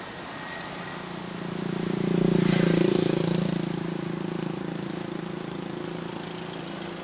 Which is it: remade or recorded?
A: recorded